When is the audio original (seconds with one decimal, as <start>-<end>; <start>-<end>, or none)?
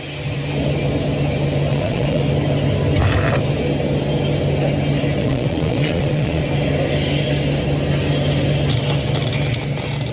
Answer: 0.0-1.7; 2.2-5.2; 6.4-10.1